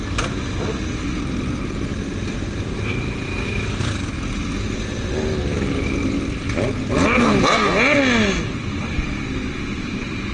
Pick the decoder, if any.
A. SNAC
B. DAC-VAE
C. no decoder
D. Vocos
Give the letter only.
C